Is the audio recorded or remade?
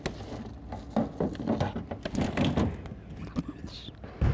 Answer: recorded